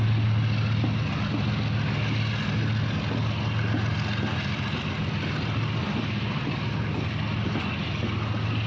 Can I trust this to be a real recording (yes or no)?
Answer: yes